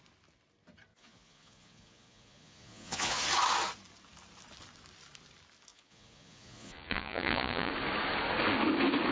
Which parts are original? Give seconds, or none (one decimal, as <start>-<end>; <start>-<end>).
0.0-0.9; 3.2-5.7; 7.7-9.1